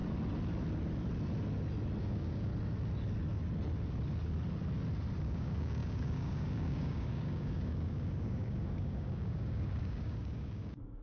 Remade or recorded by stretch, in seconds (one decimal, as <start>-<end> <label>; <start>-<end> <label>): 0.0-2.0 recorded; 2.0-2.5 remade; 2.5-5.2 recorded; 5.2-11.0 remade

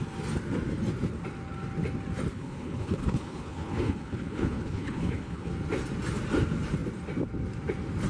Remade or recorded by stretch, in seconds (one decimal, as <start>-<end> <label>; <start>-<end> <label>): 0.0-2.3 recorded; 2.3-5.5 remade; 5.5-8.1 recorded

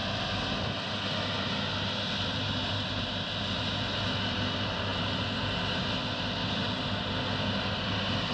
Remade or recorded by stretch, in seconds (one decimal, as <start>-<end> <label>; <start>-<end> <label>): 0.0-8.3 recorded

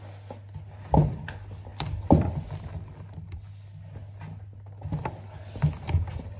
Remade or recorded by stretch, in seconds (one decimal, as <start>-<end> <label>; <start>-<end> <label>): 0.0-6.4 recorded

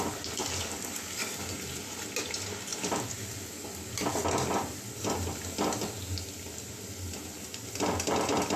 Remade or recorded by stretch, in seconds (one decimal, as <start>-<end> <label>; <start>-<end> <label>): 0.0-8.6 recorded

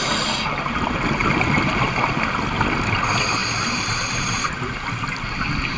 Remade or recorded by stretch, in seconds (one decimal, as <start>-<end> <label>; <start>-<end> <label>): 0.0-5.8 recorded